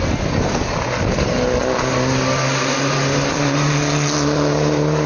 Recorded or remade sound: recorded